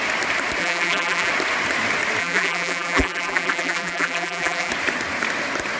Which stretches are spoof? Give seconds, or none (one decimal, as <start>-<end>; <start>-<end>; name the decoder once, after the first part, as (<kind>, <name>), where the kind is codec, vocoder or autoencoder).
0.6-1.3 (vocoder, BigVGAN v2); 2.2-4.7